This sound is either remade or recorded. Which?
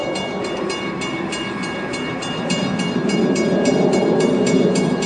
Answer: recorded